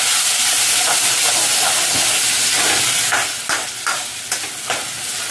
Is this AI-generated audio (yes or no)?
no